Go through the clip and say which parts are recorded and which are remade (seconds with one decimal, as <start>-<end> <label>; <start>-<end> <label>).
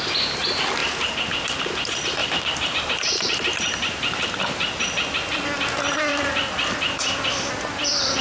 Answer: 0.0-2.2 recorded; 2.2-4.4 remade; 4.4-6.1 recorded; 6.1-6.8 remade; 6.8-8.2 recorded